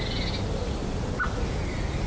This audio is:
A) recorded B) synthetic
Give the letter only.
A